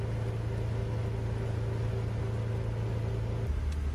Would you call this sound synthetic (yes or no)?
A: no